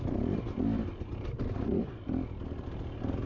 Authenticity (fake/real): real